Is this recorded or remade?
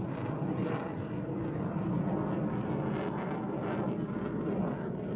recorded